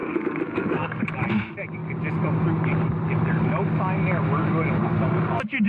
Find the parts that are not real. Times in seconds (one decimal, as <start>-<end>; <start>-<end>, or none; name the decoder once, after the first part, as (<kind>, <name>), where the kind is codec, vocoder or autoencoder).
0.0-1.1 (codec, SNAC)